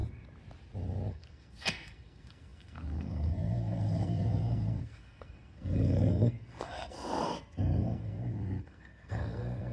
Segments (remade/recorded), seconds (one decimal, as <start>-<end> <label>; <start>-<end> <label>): 0.0-1.1 recorded; 1.1-9.7 remade